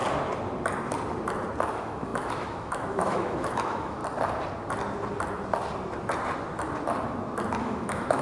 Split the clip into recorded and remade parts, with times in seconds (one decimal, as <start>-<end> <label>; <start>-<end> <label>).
0.0-1.7 recorded; 1.7-4.0 remade; 4.0-7.6 recorded; 7.6-8.2 remade